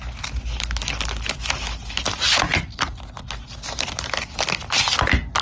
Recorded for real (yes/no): yes